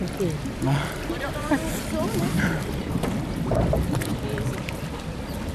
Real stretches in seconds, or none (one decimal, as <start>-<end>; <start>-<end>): 0.0-5.5

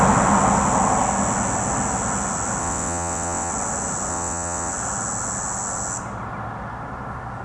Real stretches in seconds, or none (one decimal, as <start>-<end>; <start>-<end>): 0.0-2.6; 3.5-4.1; 4.7-7.4

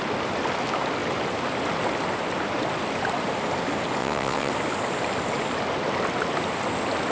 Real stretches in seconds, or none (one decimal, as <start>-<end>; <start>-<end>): 0.0-4.0; 4.5-7.1

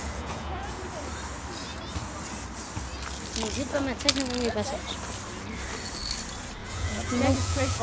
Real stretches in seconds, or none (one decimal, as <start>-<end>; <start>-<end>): 0.8-6.6

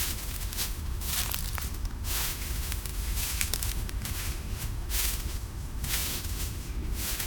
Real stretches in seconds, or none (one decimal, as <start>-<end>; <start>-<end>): 1.1-1.7

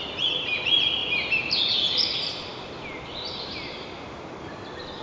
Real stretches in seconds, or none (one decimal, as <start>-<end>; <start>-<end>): 0.0-5.0

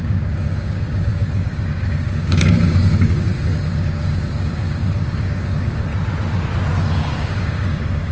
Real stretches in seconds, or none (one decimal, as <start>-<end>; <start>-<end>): 5.9-6.8